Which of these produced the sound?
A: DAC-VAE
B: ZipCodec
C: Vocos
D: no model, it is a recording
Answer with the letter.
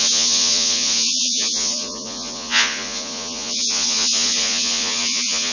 C